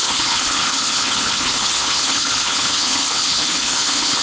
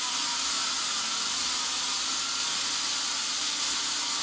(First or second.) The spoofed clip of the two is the first